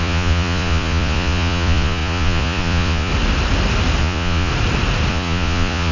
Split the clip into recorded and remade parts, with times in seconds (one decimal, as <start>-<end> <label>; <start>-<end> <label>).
0.0-3.1 remade; 3.1-4.0 recorded; 4.0-4.5 remade; 4.5-5.1 recorded; 5.1-5.9 remade